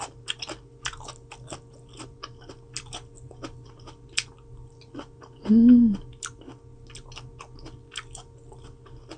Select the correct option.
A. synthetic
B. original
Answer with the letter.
B